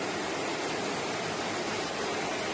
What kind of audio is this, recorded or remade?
remade